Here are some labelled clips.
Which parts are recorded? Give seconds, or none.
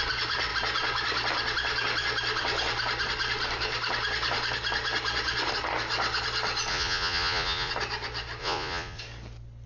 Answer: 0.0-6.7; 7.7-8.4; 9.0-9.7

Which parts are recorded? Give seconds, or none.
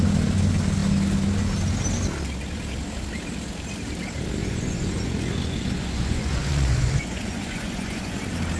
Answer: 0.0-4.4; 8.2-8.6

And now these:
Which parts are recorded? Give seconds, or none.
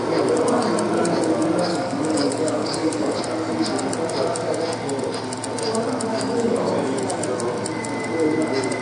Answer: 0.0-1.7; 3.2-6.1; 6.7-8.8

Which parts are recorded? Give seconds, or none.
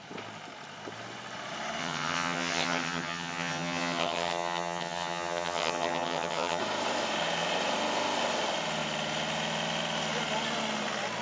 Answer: 0.0-1.8; 6.6-11.2